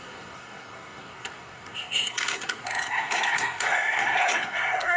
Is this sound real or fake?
fake